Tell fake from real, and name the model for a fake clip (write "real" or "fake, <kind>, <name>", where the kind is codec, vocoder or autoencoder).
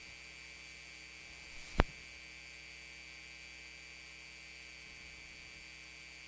real